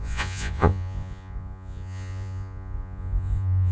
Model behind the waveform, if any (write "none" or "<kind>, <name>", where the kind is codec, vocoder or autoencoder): vocoder, Vocos